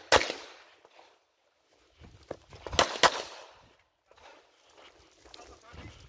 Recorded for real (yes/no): yes